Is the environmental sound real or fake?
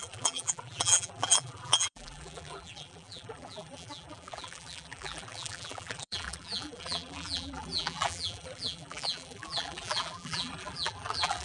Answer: fake